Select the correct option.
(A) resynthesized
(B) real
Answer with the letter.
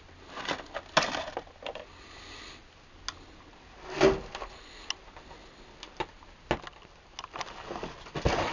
B